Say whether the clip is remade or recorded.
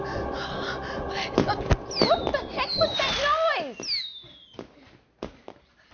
recorded